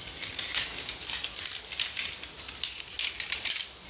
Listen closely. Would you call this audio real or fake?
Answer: real